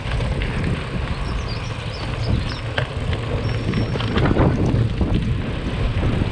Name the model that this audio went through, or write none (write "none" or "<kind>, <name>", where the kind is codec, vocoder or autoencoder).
none